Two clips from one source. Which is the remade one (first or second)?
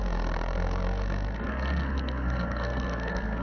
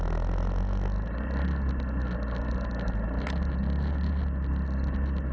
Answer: first